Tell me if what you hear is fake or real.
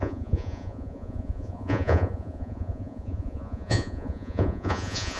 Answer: fake